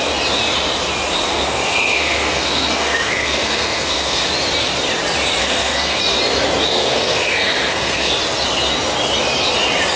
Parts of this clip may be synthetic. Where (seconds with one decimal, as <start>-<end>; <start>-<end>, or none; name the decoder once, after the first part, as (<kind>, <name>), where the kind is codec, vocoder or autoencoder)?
1.3-4.3 (codec, SNAC); 5.4-6.0; 6.7-8.1